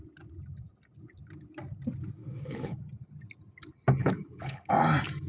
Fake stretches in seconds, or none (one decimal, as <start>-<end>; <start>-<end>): 2.2-2.8; 4.0-4.7